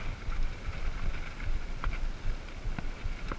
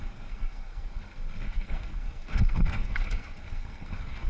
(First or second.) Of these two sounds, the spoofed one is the second